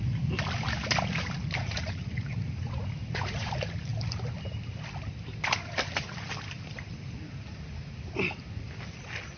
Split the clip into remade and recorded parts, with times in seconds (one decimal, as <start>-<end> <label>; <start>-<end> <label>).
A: 0.0-1.6 recorded; 1.6-2.5 remade; 2.5-3.0 recorded; 3.0-3.5 remade; 3.5-9.4 recorded

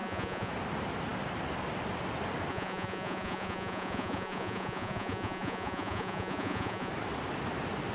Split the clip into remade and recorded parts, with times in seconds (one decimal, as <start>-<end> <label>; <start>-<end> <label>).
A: 0.0-0.5 remade; 0.5-2.5 recorded; 2.5-6.9 remade; 6.9-7.9 recorded

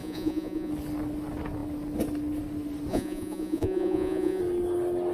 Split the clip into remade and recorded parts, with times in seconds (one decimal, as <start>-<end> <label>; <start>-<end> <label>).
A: 0.0-0.7 remade; 0.7-2.9 recorded; 2.9-4.4 remade; 4.4-5.1 recorded

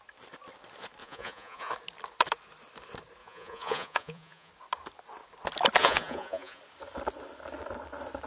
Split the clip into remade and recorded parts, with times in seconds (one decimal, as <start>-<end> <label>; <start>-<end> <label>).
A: 0.0-1.0 recorded; 1.0-1.7 remade; 1.7-3.2 recorded; 3.2-4.5 remade; 4.5-5.8 recorded; 5.8-6.6 remade; 6.6-8.3 recorded

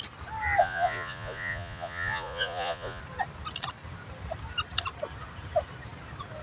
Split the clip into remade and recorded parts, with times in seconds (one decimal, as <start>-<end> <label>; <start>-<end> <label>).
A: 0.0-0.6 recorded; 0.6-3.0 remade; 3.0-6.4 recorded

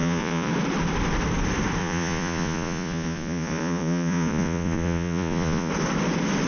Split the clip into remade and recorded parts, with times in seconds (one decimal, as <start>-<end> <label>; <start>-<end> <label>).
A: 0.0-0.5 remade; 0.5-1.8 recorded; 1.8-5.7 remade; 5.7-6.5 recorded

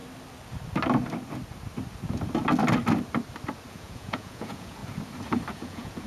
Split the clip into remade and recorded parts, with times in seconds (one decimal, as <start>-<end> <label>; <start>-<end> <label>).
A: 0.0-3.7 recorded; 3.7-4.8 remade; 4.8-5.5 recorded; 5.5-6.1 remade

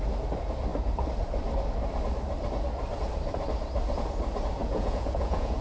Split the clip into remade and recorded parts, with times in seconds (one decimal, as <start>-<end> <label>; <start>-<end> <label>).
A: 0.0-4.6 recorded; 4.6-5.6 remade